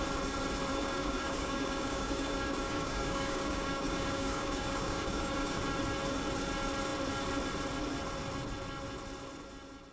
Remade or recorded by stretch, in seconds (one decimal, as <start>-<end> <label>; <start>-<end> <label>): 0.0-0.7 recorded; 0.7-5.6 remade; 5.6-9.9 recorded